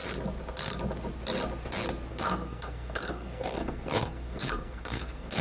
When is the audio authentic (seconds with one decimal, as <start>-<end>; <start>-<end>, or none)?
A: 0.0-2.1